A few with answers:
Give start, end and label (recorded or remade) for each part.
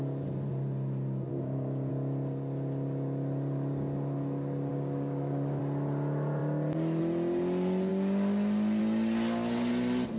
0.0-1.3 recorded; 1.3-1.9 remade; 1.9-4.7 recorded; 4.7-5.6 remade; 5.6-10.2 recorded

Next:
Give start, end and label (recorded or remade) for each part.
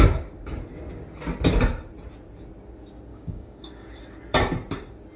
0.0-3.1 recorded; 3.1-4.0 remade; 4.0-5.2 recorded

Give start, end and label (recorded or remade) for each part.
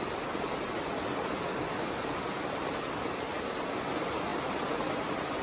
0.0-5.4 recorded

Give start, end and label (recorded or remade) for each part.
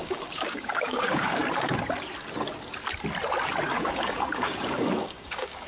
0.0-1.4 remade; 1.4-3.7 recorded; 3.7-5.7 remade